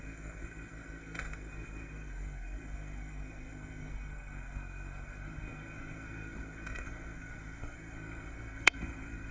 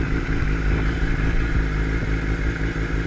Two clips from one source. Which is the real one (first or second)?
second